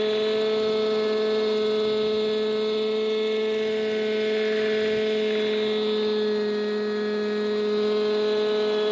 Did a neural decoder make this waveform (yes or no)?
no